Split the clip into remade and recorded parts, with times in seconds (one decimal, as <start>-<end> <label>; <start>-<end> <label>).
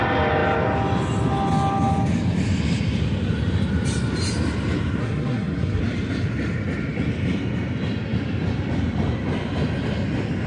0.0-5.0 recorded; 5.0-5.8 remade; 5.8-10.5 recorded